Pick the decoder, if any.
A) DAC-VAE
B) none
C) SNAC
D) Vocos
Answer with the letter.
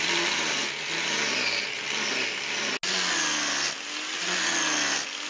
B